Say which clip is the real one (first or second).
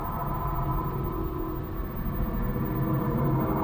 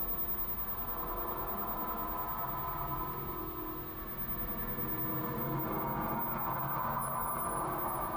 second